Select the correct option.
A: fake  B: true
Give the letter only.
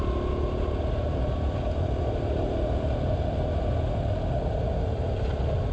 B